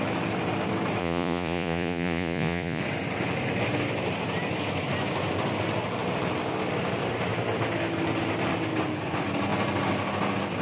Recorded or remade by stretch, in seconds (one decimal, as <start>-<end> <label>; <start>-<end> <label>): 0.0-1.0 recorded; 1.0-2.8 remade; 2.8-10.6 recorded